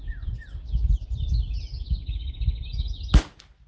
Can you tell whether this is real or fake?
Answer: real